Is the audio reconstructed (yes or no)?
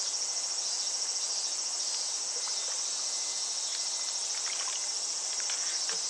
no